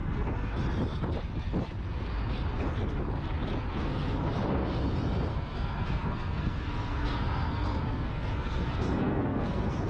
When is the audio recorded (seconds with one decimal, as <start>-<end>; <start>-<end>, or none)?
0.6-3.7; 4.3-5.3

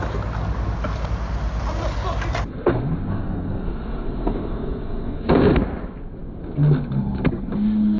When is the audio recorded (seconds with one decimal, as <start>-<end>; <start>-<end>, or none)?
0.0-3.1; 5.3-8.0

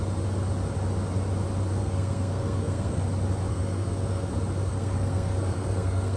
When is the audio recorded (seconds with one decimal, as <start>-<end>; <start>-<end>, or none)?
0.0-1.8; 3.0-3.5; 4.3-4.7